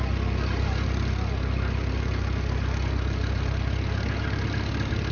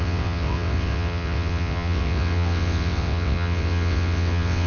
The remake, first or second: second